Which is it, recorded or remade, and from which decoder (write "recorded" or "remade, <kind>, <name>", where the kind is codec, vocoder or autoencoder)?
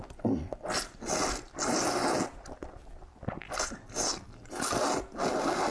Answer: recorded